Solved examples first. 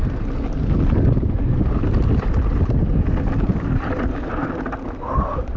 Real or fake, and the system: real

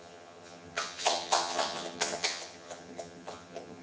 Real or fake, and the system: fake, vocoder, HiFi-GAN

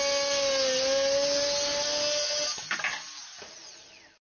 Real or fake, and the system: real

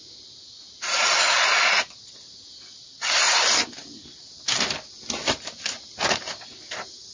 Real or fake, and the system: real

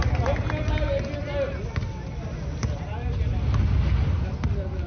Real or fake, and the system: real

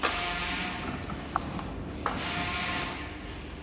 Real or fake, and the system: real